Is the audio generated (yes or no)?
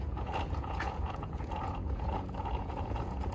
yes